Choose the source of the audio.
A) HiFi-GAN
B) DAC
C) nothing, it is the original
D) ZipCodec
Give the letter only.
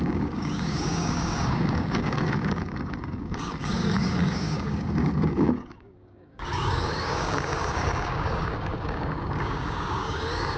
B